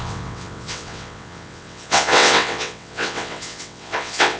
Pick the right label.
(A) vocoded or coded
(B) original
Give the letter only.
A